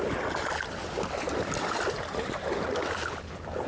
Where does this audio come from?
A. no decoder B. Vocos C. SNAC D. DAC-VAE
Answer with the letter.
A